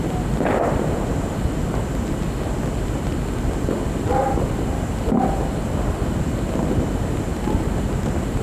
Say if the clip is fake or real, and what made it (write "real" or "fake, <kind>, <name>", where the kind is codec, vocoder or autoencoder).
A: real